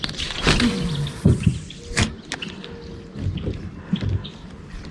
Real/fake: real